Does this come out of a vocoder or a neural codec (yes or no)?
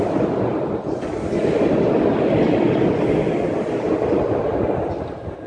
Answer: no